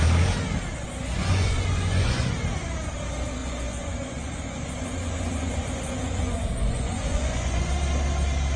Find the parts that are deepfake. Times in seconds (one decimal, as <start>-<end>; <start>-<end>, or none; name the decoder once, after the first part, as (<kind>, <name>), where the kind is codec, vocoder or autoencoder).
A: 0.8-2.3 (vocoder, Vocos); 3.4-7.7